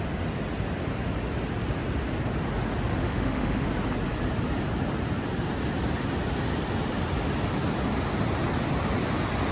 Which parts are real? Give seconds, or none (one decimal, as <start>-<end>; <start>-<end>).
0.0-3.0; 3.7-9.5

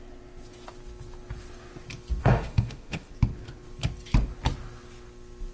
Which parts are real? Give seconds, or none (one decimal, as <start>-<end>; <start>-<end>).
0.0-2.2; 3.1-5.5